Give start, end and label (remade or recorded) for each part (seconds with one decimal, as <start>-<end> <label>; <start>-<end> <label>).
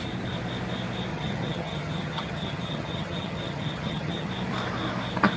0.0-1.1 recorded; 1.1-4.3 remade; 4.3-5.4 recorded